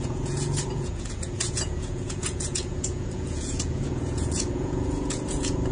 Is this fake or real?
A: fake